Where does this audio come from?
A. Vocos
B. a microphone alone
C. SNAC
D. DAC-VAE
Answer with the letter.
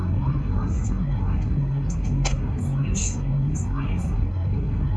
C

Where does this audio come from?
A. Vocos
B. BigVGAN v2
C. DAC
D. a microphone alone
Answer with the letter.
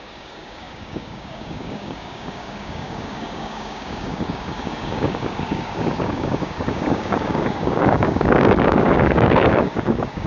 C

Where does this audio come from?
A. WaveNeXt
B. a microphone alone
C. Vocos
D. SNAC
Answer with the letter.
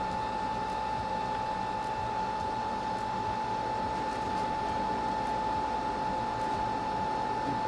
B